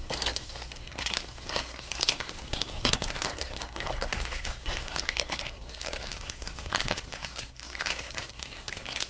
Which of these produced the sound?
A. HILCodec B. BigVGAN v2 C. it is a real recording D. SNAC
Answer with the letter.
D